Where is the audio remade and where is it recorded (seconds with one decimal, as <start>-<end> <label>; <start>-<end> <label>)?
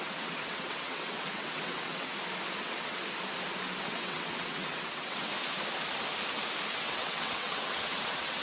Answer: 0.0-2.1 remade; 2.1-2.6 recorded; 2.6-3.0 remade; 3.0-3.8 recorded; 3.8-5.3 remade; 5.3-6.7 recorded; 6.7-8.4 remade